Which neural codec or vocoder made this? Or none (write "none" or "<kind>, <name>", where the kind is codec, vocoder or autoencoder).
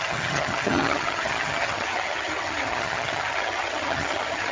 vocoder, HiFi-GAN